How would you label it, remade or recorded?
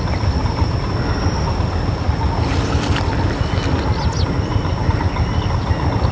recorded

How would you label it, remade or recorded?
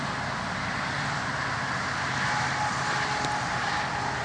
recorded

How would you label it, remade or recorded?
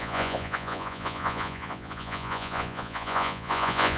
remade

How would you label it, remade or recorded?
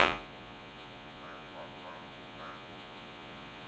remade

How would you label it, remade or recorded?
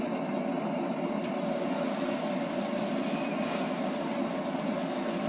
recorded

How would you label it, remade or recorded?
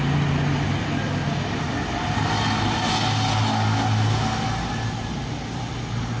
recorded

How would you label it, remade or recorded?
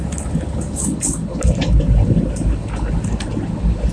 recorded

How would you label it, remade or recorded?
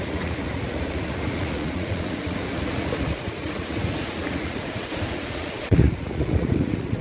remade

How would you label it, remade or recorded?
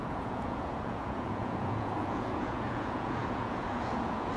remade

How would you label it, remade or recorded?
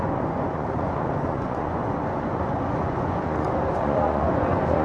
remade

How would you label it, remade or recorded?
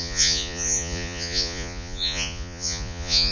remade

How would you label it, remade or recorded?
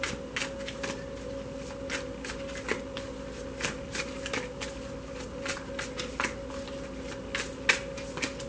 recorded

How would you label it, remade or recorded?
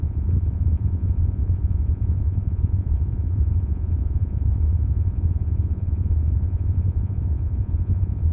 remade